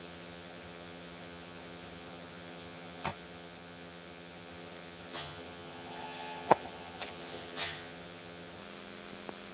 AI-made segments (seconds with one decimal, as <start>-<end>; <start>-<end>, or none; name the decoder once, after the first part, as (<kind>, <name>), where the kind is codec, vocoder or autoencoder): 0.0-8.6 (vocoder, HiFi-GAN)